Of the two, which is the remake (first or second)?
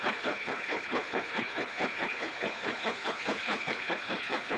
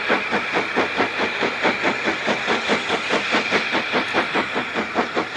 first